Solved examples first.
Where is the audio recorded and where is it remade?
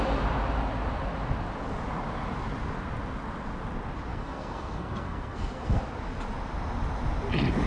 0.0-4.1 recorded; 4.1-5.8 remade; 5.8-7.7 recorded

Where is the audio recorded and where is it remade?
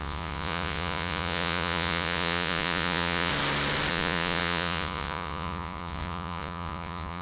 0.0-3.3 remade; 3.3-3.9 recorded; 3.9-7.2 remade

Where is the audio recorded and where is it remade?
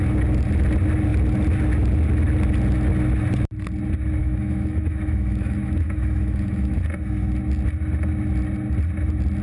0.0-4.2 recorded; 4.2-6.8 remade; 6.8-9.4 recorded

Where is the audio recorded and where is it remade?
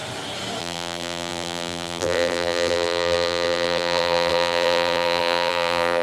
0.0-0.6 recorded; 0.6-6.0 remade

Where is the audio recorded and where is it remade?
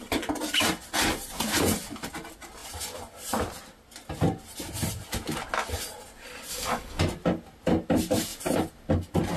0.0-6.5 recorded; 6.5-7.0 remade; 7.0-9.4 recorded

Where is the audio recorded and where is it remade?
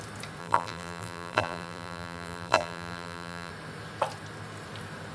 0.0-0.4 recorded; 0.4-3.5 remade; 3.5-5.1 recorded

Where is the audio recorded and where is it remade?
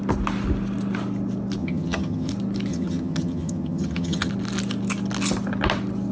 0.0-1.6 recorded; 1.6-2.3 remade; 2.3-2.7 recorded; 2.7-4.3 remade; 4.3-6.1 recorded